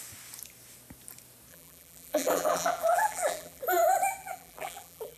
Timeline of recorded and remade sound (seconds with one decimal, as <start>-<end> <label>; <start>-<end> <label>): 0.0-1.5 recorded; 1.5-3.6 remade; 3.6-4.2 recorded; 4.2-5.2 remade